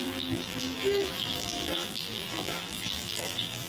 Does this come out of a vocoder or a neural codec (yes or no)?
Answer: yes